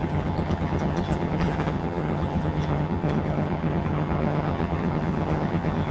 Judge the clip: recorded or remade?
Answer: remade